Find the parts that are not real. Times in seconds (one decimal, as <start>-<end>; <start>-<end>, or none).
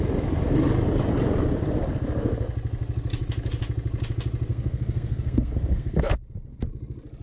4.5-6.2